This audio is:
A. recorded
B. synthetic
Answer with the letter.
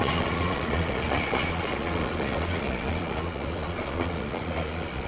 B